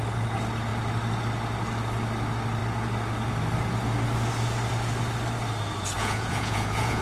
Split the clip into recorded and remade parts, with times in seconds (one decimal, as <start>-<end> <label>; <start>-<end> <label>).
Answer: 0.0-6.0 recorded; 6.0-7.0 remade